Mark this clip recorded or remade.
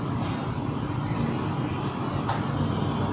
recorded